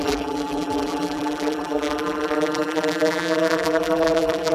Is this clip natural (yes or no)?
no